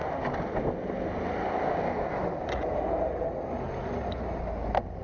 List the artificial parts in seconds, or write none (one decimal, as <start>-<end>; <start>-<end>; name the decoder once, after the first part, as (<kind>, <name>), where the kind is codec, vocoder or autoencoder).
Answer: none

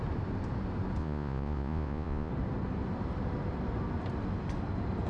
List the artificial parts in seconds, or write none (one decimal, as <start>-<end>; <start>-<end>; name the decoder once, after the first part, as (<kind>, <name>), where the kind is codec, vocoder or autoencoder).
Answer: 1.0-2.3 (vocoder, Vocos)

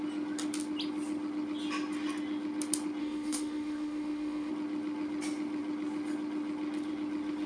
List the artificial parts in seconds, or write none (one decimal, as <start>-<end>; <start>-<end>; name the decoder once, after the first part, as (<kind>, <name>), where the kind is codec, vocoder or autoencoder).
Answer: 3.0-4.5 (autoencoder, DAC-VAE)

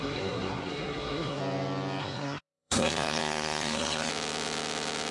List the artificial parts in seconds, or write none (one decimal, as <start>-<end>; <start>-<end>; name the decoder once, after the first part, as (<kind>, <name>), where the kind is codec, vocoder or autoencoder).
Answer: 0.0-1.4 (codec, SNAC); 2.0-4.1

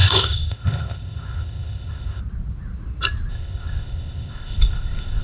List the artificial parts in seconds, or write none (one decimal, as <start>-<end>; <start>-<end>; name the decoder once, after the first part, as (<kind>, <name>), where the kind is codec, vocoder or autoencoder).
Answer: 0.0-2.2 (codec, ZipCodec); 3.3-5.2

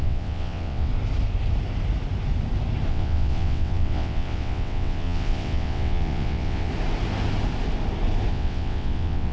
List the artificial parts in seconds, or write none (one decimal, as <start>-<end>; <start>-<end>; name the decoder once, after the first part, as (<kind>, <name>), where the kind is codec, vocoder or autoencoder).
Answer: 0.0-0.9 (vocoder, WaveNeXt); 2.9-6.7; 8.3-9.3

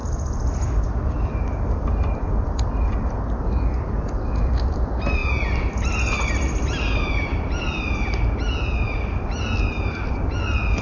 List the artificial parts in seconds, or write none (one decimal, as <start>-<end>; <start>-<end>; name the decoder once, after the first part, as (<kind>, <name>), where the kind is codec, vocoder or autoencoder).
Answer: none

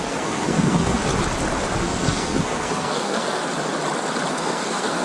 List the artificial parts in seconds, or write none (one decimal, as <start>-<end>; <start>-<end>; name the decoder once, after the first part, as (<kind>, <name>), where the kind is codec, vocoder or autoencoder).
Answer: 0.0-1.1 (codec, SNAC); 1.8-3.4; 4.3-5.0